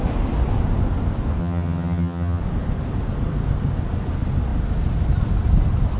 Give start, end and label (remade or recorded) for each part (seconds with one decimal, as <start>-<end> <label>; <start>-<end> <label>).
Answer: 0.0-1.4 recorded; 1.4-2.4 remade; 2.4-6.0 recorded